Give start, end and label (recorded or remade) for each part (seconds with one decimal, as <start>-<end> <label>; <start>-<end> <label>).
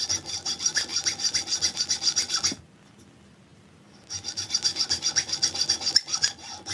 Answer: 0.0-6.7 recorded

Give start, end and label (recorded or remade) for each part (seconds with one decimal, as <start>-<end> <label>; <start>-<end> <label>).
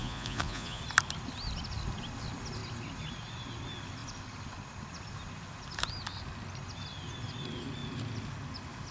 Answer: 0.0-0.8 remade; 0.8-8.9 recorded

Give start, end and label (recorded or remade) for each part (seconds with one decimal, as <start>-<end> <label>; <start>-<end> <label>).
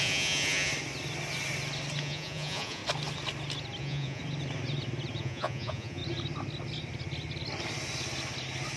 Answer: 0.0-0.7 remade; 0.7-2.0 recorded; 2.0-2.8 remade; 2.8-3.8 recorded; 3.8-4.2 remade; 4.2-5.2 recorded; 5.2-6.0 remade; 6.0-8.8 recorded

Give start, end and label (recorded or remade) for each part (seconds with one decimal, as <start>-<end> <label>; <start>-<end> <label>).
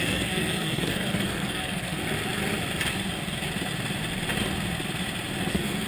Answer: 0.0-2.0 remade; 2.0-5.5 recorded; 5.5-5.9 remade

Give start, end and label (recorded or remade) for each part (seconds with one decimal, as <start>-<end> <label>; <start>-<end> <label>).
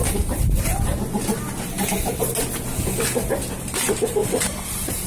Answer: 0.0-4.2 recorded; 4.2-5.1 remade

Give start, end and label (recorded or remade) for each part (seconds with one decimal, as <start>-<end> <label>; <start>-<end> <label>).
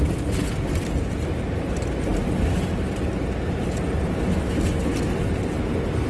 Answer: 0.0-6.1 recorded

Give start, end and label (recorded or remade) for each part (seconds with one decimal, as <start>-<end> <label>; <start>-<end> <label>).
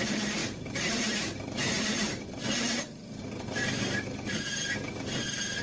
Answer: 0.0-5.6 remade